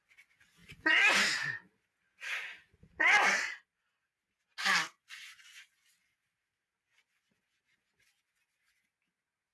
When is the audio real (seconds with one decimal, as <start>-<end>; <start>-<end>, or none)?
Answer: 0.0-9.5